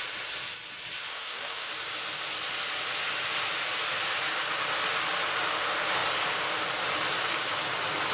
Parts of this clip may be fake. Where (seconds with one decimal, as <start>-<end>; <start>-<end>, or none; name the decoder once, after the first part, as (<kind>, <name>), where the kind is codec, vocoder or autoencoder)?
1.1-1.7 (codec, DAC)